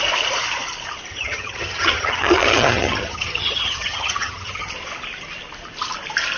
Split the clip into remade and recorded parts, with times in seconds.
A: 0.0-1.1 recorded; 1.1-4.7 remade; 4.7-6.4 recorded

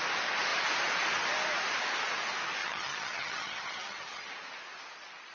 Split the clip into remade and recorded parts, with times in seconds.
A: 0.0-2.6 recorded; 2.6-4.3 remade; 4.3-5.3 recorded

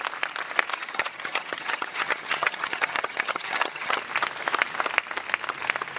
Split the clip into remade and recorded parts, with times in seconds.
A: 0.0-0.7 recorded; 0.7-4.0 remade; 4.0-6.0 recorded

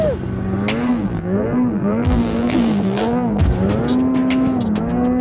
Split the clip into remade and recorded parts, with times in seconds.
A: 0.0-0.9 recorded; 0.9-3.4 remade; 3.4-5.2 recorded

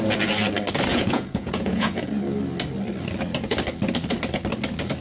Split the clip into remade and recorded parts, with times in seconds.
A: 0.0-0.9 recorded; 0.9-2.2 remade; 2.2-5.0 recorded